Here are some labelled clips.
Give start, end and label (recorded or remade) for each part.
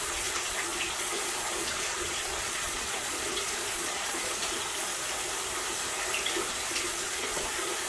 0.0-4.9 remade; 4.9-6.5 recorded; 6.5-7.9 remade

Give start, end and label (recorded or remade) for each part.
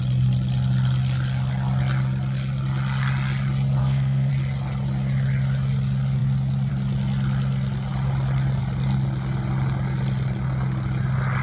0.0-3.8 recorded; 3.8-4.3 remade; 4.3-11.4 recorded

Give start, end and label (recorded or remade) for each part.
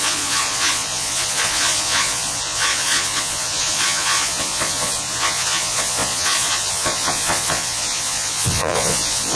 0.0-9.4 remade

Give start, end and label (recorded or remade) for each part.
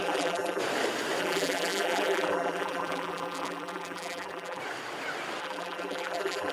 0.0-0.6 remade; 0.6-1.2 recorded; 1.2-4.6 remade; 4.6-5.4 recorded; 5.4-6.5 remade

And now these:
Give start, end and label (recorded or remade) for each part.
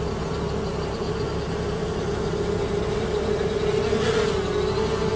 0.0-5.2 recorded